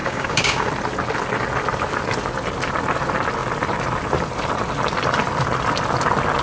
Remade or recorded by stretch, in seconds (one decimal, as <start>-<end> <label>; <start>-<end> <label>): 0.0-0.7 remade; 0.7-6.4 recorded